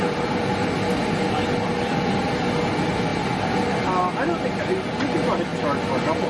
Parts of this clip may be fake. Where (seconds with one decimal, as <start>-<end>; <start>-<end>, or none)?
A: none